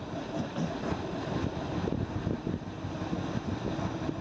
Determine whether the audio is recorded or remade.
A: remade